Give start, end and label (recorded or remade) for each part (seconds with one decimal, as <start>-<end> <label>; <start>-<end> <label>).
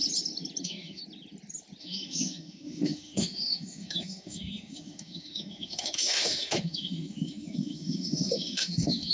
0.0-0.6 recorded; 0.6-1.0 remade; 1.0-1.8 recorded; 1.8-9.1 remade